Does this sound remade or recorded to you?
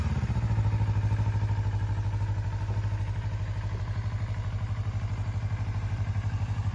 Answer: recorded